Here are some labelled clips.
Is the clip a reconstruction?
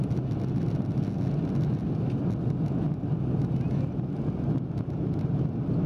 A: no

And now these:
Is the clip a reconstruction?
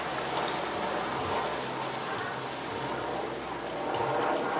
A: no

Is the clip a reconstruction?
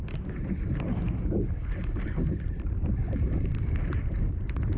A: no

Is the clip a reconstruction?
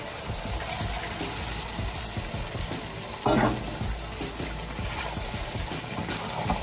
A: no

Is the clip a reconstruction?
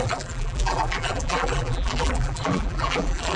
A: yes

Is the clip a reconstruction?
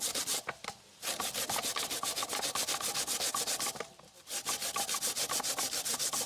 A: no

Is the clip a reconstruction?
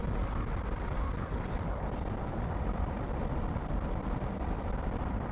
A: yes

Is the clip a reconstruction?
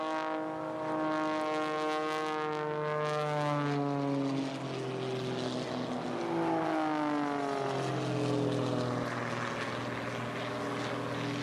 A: no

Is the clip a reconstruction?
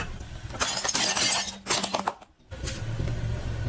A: no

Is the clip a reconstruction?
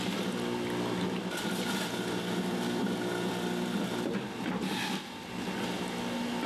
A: no